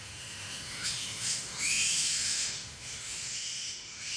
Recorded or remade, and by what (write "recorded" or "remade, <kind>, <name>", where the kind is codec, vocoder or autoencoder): remade, autoencoder, DAC-VAE